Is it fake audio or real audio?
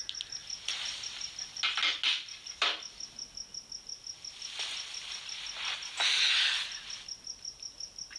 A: real